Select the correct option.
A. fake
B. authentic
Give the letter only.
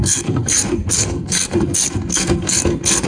A